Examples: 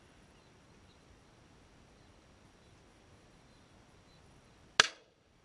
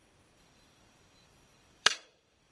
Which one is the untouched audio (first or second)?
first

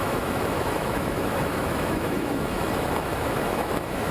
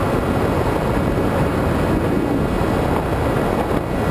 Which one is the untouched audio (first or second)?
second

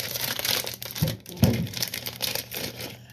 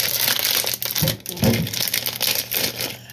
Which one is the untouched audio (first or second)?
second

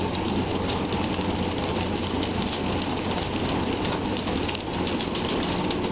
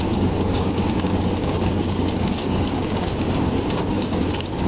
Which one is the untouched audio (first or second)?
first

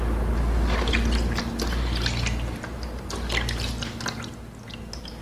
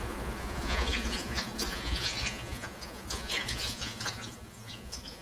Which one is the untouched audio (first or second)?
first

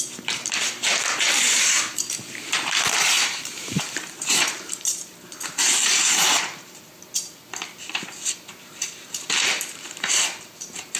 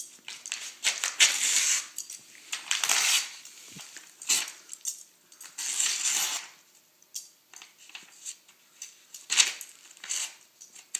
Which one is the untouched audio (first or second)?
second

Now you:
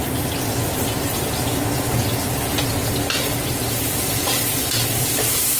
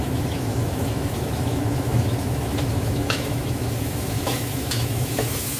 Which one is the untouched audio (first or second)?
first